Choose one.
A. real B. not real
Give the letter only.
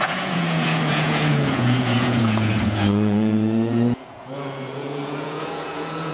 B